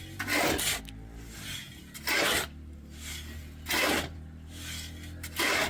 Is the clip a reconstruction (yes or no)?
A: no